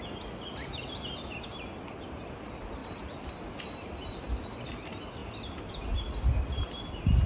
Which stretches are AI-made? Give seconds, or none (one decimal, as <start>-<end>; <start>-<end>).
2.8-3.3